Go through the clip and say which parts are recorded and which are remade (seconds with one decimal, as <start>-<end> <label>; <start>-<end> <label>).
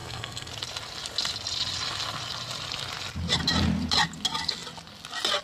0.0-0.5 remade; 0.5-5.4 recorded